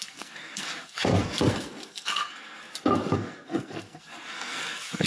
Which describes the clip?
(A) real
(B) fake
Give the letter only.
B